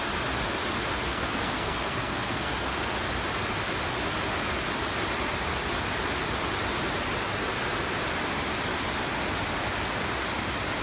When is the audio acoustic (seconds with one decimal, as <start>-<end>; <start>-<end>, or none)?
0.0-1.1; 2.9-10.8